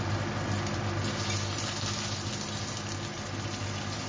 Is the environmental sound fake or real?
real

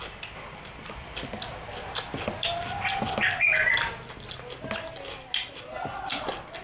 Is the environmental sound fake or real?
real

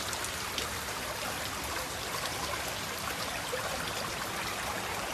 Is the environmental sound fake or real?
real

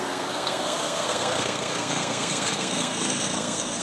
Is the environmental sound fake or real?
fake